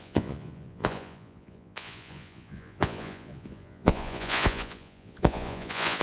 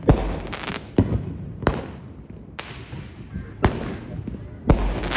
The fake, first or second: first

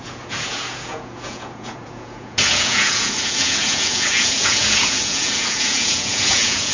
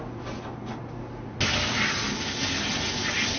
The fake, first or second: first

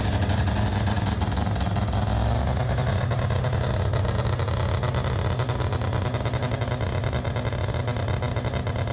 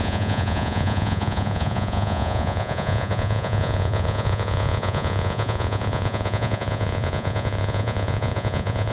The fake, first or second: second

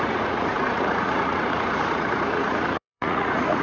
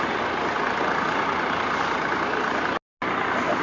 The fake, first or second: first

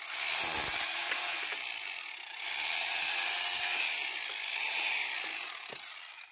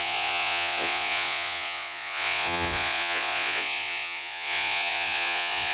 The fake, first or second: second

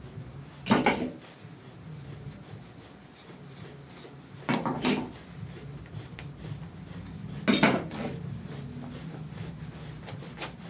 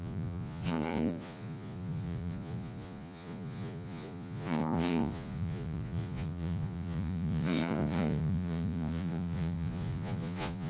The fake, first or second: second